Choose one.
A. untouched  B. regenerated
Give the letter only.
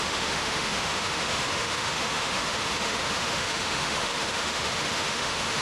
B